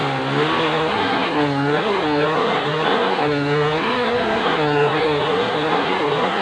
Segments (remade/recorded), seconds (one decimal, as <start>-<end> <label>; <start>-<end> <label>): 0.0-0.6 recorded; 0.6-6.4 remade